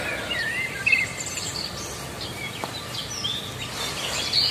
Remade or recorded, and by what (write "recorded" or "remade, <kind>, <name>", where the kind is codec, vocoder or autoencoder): recorded